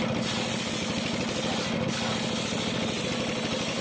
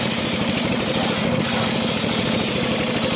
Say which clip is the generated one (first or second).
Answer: second